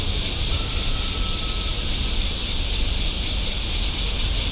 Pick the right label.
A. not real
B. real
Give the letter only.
B